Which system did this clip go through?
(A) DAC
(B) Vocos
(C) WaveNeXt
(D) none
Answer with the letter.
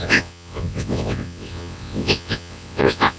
C